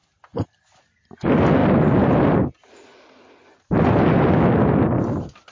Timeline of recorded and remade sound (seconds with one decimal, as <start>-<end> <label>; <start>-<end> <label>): 0.0-5.5 recorded

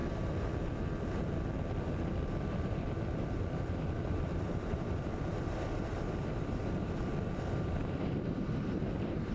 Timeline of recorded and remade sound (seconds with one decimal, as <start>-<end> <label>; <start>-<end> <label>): 0.0-2.5 recorded; 2.5-9.3 remade